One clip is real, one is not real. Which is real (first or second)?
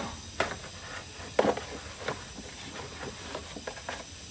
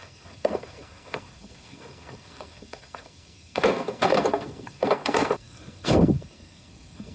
first